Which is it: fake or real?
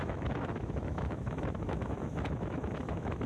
fake